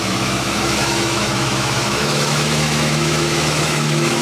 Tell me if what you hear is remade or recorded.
remade